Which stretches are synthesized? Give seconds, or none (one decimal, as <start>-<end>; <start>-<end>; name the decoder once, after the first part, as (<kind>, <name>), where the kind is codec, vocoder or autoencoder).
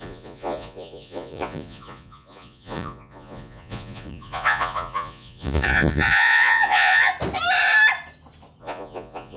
0.0-7.1 (vocoder, Vocos); 8.6-9.4